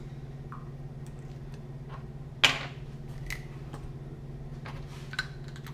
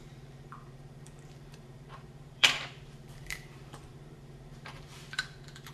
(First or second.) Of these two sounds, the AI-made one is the second